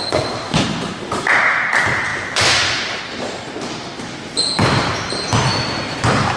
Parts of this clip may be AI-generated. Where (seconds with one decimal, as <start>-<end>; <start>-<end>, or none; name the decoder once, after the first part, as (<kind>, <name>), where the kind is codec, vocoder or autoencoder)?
0.0-6.4 (vocoder, BigVGAN v2)